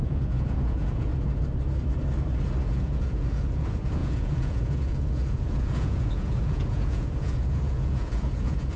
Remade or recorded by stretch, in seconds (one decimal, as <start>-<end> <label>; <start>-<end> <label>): 0.0-1.1 remade; 1.1-2.6 recorded; 2.6-8.8 remade